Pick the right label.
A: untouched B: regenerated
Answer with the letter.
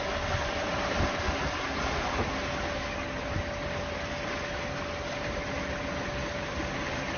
A